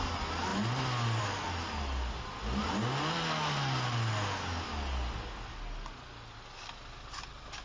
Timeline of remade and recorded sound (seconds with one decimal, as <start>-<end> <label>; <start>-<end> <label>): 0.0-7.6 recorded